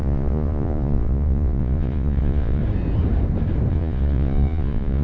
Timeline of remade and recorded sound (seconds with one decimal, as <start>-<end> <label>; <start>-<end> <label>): 0.0-2.6 remade; 2.6-3.7 recorded; 3.7-5.0 remade